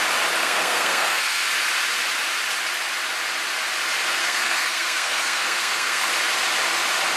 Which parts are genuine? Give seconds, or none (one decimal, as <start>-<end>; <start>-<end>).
0.0-0.4; 1.4-4.2; 6.1-7.2